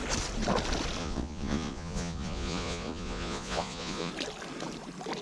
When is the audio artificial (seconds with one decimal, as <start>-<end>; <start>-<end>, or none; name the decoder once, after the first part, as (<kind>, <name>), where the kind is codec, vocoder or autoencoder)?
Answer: 1.0-4.1 (vocoder, Vocos)